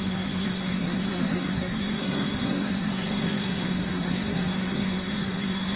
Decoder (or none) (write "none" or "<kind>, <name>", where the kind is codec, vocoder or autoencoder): codec, SNAC